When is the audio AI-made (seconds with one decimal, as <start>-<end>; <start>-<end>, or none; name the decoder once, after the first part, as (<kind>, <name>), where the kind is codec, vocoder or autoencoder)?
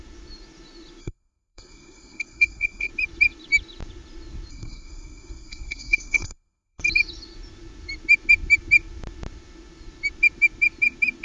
1.0-2.9 (codec, SNAC); 4.5-6.8